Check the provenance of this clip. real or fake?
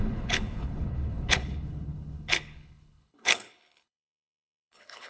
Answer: fake